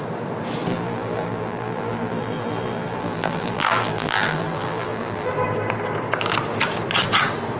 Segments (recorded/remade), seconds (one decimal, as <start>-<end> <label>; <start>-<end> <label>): 0.0-0.7 recorded; 0.7-5.3 remade; 5.3-7.6 recorded